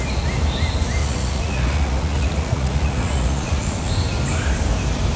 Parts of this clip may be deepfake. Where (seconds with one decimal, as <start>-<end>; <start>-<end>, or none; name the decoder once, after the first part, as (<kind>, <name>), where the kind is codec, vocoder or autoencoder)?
1.0-3.9 (vocoder, Vocos)

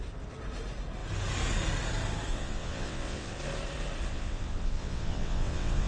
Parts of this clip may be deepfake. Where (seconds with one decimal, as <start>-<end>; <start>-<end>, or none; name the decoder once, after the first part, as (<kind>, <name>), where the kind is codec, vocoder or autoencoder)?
2.3-3.4 (vocoder, WaveNeXt); 4.1-5.9